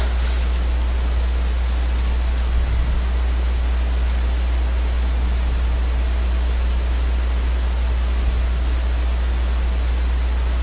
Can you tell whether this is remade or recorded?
recorded